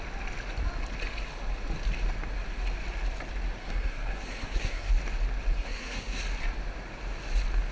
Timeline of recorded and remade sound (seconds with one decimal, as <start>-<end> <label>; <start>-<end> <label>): 0.0-3.6 recorded; 3.6-4.9 remade; 4.9-5.5 recorded; 5.5-6.2 remade; 6.2-7.7 recorded